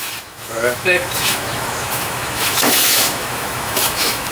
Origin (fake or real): fake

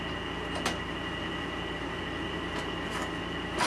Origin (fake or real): real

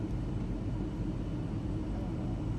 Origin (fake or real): real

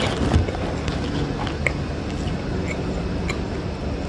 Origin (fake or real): real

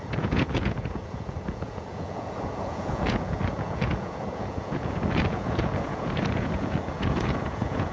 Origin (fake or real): fake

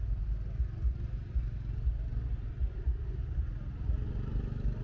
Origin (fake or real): real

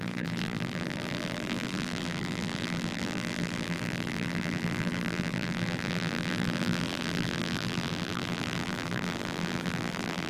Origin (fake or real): fake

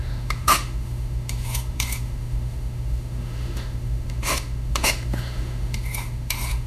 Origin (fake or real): fake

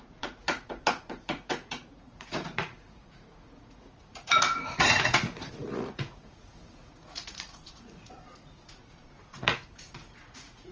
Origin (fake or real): fake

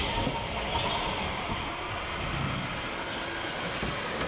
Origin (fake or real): real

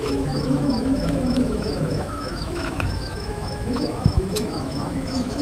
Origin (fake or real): fake